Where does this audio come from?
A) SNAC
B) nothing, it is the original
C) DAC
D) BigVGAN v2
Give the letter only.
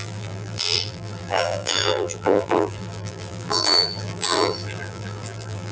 D